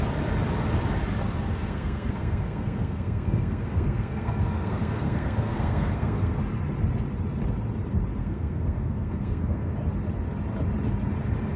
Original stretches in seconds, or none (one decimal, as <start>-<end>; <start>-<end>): 0.0-1.6; 6.4-8.2; 9.7-11.6